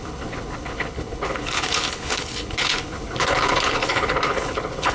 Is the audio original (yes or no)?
no